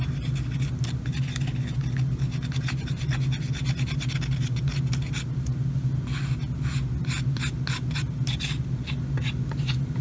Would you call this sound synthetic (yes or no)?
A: no